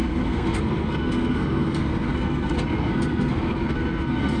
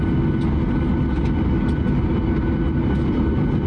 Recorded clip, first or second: second